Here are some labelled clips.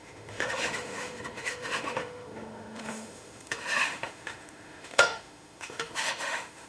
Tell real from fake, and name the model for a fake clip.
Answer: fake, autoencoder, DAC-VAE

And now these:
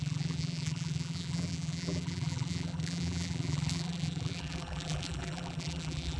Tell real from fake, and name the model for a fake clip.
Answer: fake, vocoder, BigVGAN v2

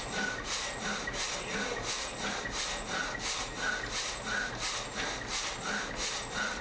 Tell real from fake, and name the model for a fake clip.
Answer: real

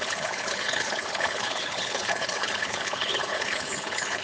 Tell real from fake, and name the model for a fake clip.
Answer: fake, codec, HILCodec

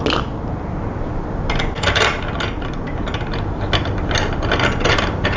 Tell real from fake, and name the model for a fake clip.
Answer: real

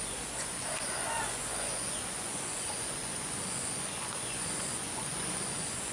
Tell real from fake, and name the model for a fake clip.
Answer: fake, vocoder, Vocos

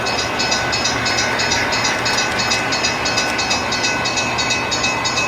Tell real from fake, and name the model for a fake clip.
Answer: real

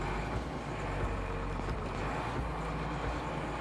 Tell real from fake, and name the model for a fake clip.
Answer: real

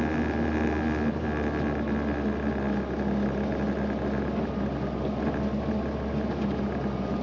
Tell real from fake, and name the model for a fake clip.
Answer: real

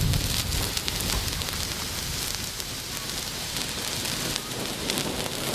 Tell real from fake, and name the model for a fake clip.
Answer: real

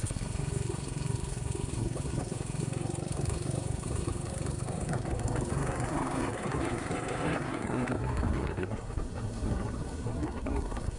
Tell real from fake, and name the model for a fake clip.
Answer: fake, codec, SNAC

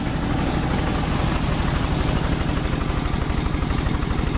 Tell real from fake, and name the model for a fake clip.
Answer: real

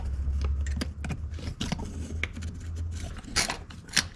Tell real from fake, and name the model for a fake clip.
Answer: real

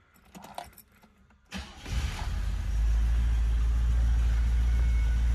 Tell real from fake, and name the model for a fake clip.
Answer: real